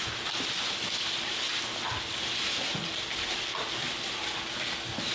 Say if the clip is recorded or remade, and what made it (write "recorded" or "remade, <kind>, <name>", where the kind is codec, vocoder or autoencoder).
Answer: recorded